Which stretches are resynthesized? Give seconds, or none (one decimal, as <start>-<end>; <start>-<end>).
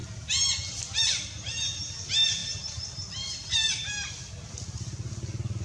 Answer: none